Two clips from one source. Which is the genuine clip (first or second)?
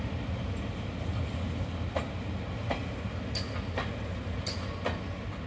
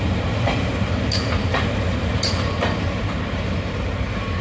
first